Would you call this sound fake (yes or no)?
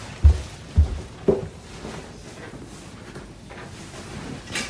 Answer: no